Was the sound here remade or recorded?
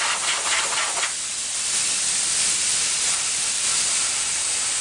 recorded